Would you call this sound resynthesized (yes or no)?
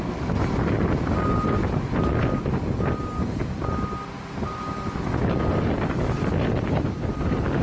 no